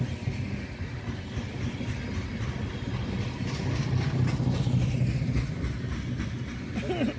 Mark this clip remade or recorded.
recorded